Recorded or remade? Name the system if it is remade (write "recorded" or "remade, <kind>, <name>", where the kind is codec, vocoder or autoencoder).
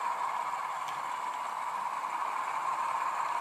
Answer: recorded